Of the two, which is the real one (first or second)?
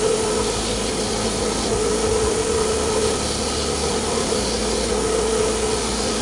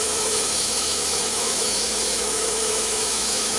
first